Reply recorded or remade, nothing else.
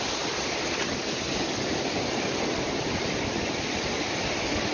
recorded